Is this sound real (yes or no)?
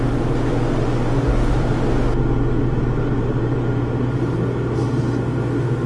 yes